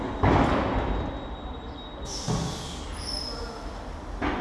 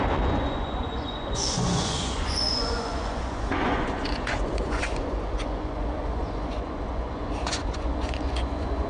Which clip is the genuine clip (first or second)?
first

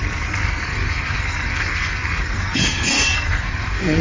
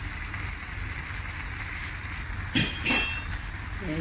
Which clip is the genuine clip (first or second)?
second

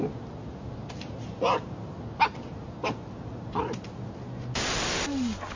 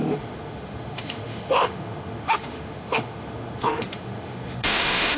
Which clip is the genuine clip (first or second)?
first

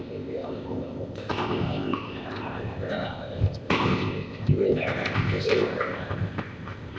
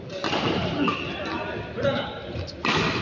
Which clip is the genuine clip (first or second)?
second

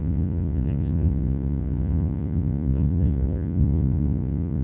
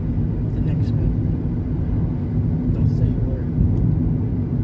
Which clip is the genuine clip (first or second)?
second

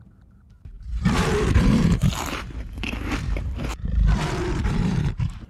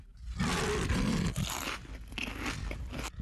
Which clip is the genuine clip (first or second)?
second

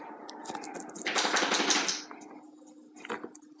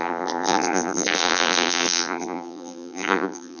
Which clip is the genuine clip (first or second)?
first